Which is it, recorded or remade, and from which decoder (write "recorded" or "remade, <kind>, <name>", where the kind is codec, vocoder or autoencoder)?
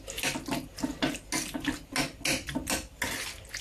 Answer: recorded